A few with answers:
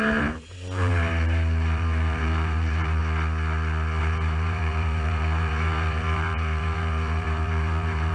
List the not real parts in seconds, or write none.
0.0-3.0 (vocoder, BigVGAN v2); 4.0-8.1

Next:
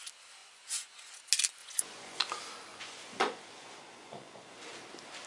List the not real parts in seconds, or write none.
0.4-1.1 (vocoder, Vocos); 1.6-2.2; 2.7-4.6

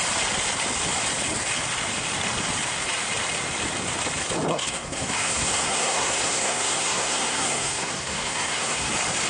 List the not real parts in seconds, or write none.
4.5-8.9 (codec, SNAC)

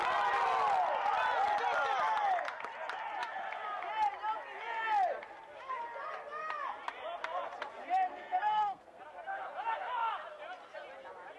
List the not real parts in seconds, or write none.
8.1-9.0 (codec, SNAC)

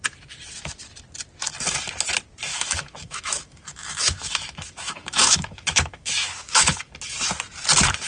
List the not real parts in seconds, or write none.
2.5-6.9 (autoencoder, DAC-VAE)

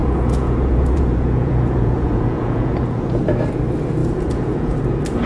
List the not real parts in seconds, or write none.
0.0-3.2 (vocoder, Vocos); 4.0-4.8

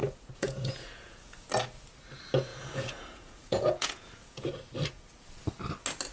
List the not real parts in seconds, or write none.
0.0-1.5 (vocoder, Vocos); 2.5-4.5